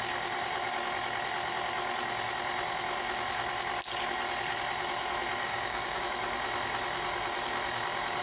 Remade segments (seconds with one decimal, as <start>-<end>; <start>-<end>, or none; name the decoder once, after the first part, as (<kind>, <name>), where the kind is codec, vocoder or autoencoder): 5.4-6.0 (codec, DAC)